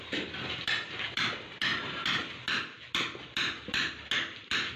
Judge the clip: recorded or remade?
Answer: recorded